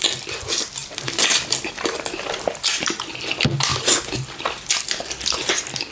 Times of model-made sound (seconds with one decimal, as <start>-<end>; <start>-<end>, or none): 0.8-3.2; 3.7-4.7